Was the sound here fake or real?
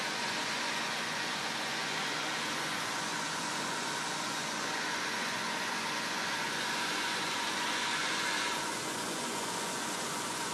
fake